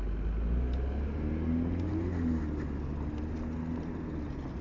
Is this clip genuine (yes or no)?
yes